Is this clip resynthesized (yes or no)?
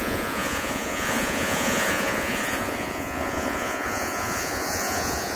yes